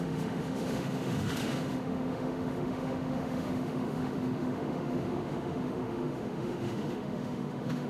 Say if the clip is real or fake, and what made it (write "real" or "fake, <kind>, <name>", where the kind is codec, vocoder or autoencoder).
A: fake, autoencoder, DAC-VAE